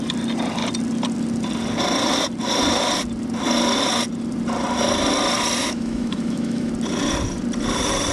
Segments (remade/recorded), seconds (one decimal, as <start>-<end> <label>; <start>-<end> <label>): 0.0-5.6 recorded; 5.6-6.7 remade; 6.7-8.1 recorded